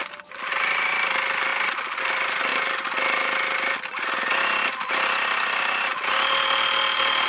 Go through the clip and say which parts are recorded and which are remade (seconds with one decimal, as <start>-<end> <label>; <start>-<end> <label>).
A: 0.0-7.3 recorded